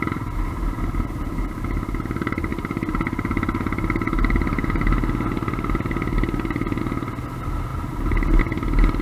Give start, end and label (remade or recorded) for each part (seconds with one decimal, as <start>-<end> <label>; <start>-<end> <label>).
0.0-7.7 recorded; 7.7-8.4 remade; 8.4-9.0 recorded